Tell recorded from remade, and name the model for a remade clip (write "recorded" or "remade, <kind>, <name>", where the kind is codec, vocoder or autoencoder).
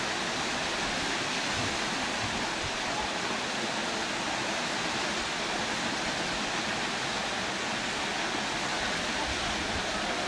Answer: recorded